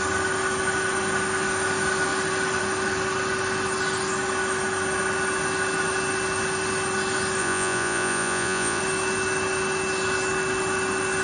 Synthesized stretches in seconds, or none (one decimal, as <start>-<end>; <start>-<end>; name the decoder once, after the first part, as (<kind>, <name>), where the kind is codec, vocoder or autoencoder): 7.4-8.8 (vocoder, Vocos)